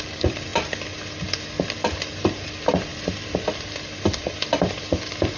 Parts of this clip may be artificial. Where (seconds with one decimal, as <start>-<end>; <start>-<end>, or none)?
none